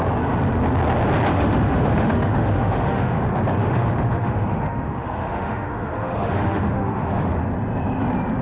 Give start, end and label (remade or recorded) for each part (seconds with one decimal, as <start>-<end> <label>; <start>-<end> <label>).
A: 0.0-1.3 recorded; 1.3-3.2 remade; 3.2-3.6 recorded; 3.6-7.3 remade; 7.3-8.4 recorded